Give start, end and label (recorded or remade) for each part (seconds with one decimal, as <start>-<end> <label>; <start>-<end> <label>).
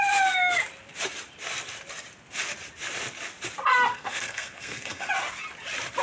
0.0-3.9 recorded; 3.9-5.1 remade; 5.1-6.0 recorded